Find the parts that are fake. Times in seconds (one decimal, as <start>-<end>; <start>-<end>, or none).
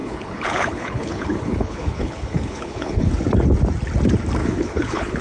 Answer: 0.0-3.1; 4.4-5.2